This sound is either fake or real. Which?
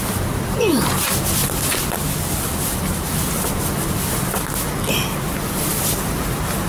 real